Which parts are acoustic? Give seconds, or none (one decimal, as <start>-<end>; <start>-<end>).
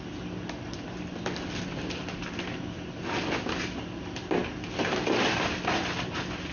0.0-6.5